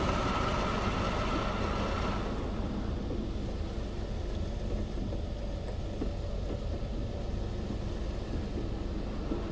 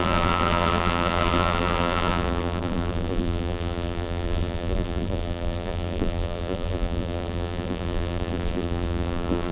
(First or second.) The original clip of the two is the first